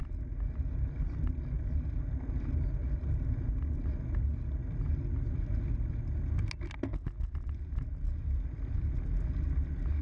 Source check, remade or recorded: recorded